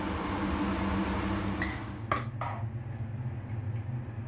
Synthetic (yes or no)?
no